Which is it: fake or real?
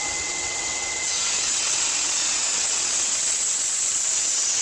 fake